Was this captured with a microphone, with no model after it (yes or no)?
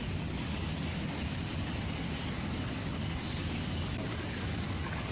no